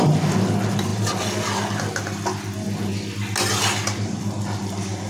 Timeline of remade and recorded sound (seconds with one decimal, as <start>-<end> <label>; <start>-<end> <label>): 0.0-5.1 recorded